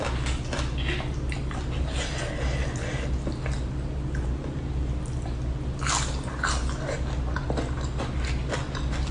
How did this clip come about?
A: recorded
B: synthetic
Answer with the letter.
A